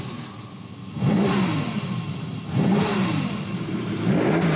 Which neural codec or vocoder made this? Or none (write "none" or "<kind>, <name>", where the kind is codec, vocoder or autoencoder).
none